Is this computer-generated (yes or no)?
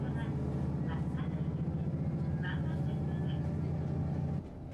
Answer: no